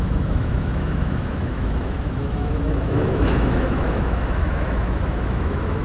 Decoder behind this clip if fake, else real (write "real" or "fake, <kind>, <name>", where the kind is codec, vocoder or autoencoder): fake, autoencoder, DAC-VAE